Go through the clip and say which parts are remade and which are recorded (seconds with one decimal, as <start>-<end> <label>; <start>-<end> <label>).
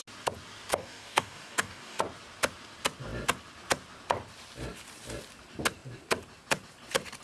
0.0-0.7 recorded; 0.7-2.0 remade; 2.0-7.2 recorded